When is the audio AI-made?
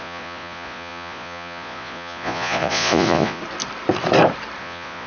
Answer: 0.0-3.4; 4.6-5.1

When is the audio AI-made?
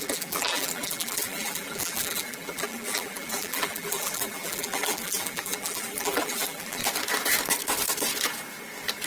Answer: 0.0-6.8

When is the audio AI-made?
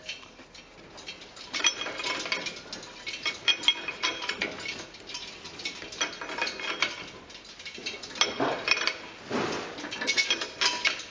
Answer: none